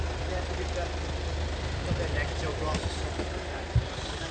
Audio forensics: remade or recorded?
recorded